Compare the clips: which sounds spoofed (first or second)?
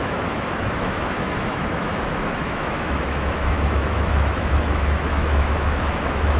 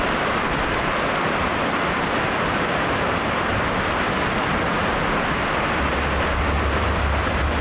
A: first